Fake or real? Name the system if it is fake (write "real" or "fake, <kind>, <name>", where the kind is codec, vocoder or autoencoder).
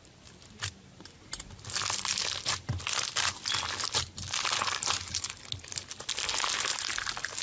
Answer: real